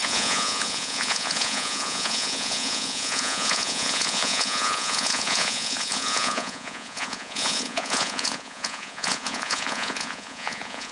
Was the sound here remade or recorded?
remade